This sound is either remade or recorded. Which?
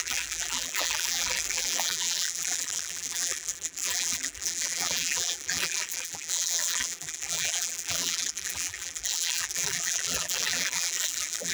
remade